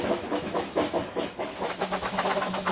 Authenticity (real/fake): fake